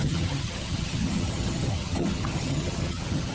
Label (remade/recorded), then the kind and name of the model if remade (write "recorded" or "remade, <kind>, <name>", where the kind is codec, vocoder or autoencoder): remade, vocoder, HiFi-GAN